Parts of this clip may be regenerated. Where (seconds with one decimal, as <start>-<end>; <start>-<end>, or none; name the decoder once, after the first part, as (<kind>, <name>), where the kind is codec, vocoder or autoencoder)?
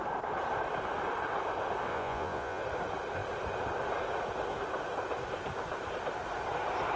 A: 1.9-2.6 (vocoder, Vocos)